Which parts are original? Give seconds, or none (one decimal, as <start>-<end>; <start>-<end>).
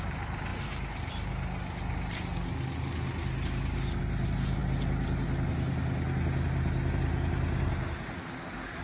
0.0-8.8